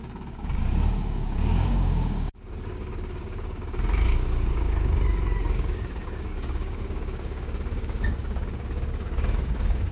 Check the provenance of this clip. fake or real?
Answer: fake